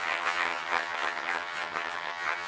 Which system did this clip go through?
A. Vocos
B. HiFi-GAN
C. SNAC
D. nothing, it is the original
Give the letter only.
B